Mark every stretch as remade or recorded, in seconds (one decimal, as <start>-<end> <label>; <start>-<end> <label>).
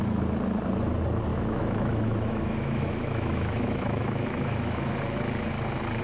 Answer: 0.0-1.3 recorded; 1.3-4.9 remade; 4.9-6.0 recorded